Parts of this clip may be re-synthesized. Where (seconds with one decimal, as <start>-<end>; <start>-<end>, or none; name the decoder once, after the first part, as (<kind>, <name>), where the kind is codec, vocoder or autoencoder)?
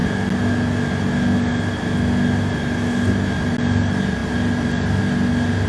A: none